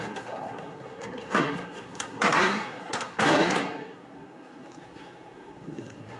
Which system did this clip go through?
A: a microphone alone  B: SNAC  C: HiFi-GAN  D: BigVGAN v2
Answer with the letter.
B